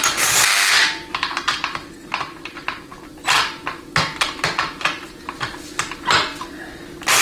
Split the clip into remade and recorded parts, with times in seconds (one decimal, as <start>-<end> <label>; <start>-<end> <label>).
0.0-7.2 recorded